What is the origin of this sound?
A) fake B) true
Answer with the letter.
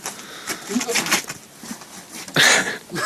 B